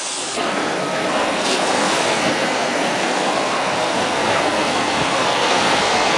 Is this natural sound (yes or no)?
no